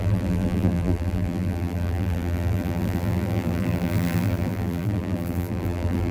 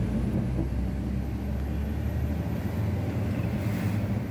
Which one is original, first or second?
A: second